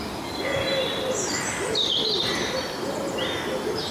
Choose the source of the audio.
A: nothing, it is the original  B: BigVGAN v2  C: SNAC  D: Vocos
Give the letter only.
B